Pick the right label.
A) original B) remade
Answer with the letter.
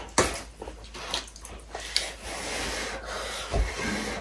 A